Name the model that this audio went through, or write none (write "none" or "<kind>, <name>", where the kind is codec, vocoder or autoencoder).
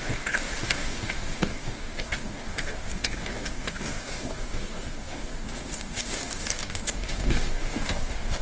codec, DAC